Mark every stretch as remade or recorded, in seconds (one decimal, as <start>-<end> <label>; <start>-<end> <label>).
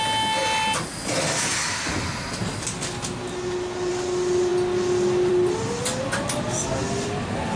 0.0-7.6 recorded